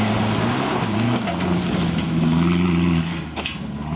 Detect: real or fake real